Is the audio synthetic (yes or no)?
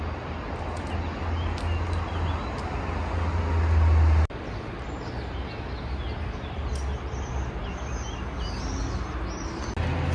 no